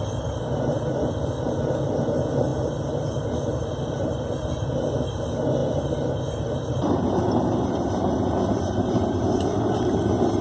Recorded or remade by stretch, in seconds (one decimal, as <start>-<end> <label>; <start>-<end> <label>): 0.0-10.4 recorded